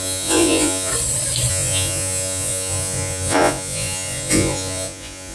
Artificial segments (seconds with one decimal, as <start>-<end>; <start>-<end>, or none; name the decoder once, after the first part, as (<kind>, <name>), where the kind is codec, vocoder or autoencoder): 0.0-0.9 (vocoder, Vocos); 1.5-5.3

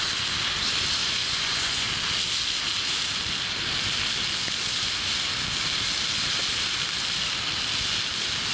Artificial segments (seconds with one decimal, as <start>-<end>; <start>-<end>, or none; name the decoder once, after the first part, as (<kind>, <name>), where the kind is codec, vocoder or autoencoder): 1.0-1.9 (vocoder, Vocos)

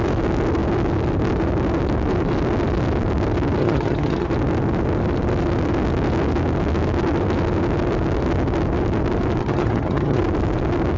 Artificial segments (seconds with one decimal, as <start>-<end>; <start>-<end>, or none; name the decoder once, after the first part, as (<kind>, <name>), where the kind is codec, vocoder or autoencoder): 3.6-4.3 (vocoder, HiFi-GAN); 9.4-10.2

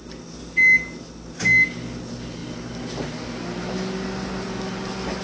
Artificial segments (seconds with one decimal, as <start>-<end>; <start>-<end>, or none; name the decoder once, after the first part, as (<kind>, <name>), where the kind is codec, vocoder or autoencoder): none

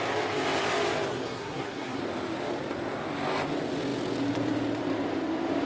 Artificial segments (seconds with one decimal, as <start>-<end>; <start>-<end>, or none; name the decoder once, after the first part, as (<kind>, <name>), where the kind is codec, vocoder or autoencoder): 1.1-2.0 (codec, SNAC)

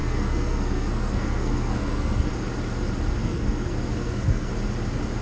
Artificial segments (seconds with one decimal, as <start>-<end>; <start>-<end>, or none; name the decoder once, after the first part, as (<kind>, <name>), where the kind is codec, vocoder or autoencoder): 0.0-2.3 (codec, SNAC); 3.2-4.5

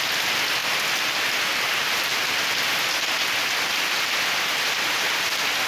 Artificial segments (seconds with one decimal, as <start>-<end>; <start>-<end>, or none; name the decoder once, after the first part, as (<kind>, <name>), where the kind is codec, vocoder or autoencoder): none

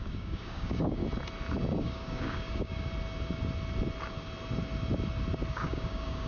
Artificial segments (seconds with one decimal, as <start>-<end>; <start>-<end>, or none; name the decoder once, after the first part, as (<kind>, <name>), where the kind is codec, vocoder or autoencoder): 0.0-1.0 (codec, DAC); 1.8-2.9; 5.5-6.3